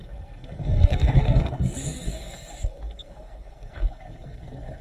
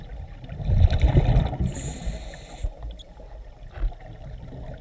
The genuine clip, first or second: second